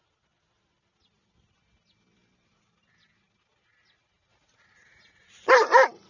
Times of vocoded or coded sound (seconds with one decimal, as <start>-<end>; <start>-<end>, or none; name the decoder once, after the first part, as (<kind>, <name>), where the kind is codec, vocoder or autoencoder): 4.3-5.5 (vocoder, Vocos)